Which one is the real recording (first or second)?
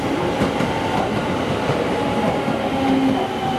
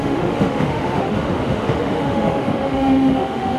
first